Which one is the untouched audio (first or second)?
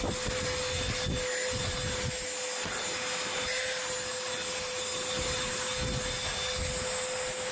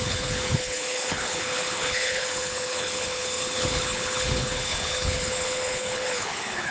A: first